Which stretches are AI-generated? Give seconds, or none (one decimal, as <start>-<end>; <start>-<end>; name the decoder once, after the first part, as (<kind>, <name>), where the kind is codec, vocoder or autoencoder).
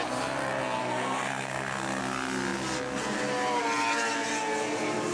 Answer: 0.8-2.0 (codec, SNAC)